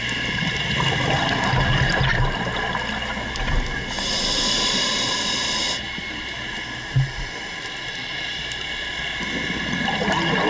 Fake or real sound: real